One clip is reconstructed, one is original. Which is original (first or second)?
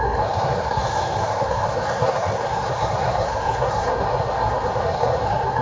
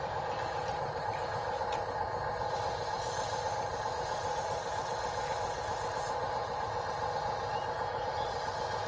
second